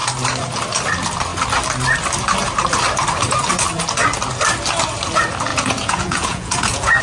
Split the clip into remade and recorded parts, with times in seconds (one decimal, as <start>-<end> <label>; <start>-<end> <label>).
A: 0.0-5.5 recorded; 5.5-7.0 remade

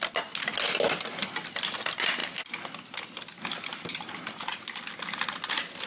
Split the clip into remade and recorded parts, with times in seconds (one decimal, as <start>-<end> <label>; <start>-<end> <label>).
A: 0.0-5.9 recorded

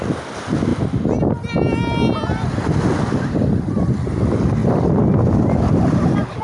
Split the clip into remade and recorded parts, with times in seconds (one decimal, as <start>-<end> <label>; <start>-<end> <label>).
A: 0.0-6.4 recorded

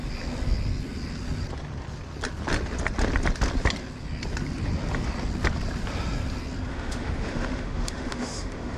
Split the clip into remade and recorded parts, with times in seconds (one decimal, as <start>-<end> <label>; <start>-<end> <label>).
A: 0.0-6.7 recorded; 6.7-8.8 remade